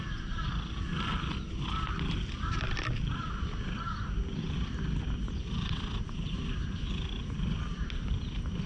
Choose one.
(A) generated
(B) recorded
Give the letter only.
B